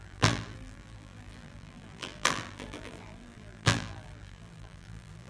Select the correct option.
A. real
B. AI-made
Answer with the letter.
B